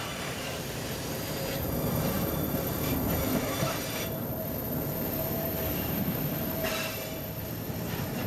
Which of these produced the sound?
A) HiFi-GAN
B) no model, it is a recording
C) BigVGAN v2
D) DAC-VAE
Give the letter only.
C